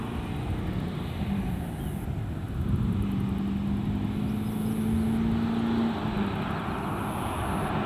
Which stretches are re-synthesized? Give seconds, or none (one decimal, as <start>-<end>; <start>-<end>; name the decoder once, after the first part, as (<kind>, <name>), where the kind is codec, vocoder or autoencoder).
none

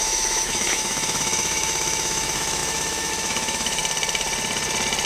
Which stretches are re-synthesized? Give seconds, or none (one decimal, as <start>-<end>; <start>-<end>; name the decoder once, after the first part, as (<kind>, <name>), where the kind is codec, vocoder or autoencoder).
0.0-3.8 (autoencoder, DAC-VAE)

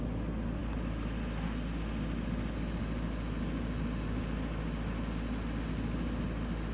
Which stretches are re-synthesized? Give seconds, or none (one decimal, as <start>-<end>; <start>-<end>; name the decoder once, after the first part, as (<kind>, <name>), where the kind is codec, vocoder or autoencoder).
none